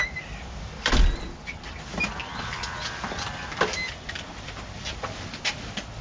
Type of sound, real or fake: real